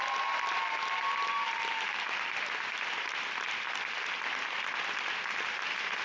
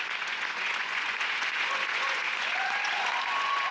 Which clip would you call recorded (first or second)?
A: first